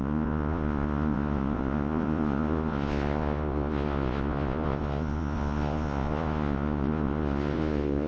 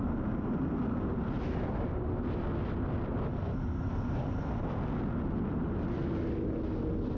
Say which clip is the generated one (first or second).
first